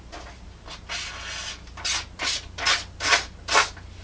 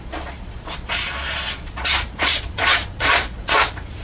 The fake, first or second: second